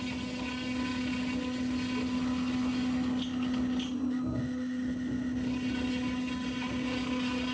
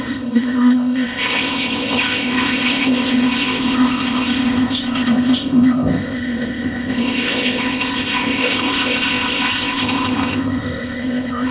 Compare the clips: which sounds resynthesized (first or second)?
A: second